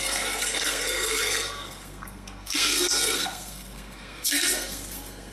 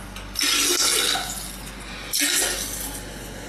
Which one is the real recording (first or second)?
second